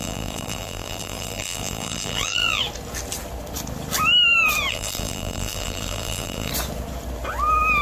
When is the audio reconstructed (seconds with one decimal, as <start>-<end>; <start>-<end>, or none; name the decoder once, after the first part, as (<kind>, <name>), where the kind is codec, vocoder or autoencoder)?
0.0-2.6 (vocoder, BigVGAN v2); 4.7-6.5